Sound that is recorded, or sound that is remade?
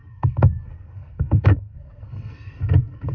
remade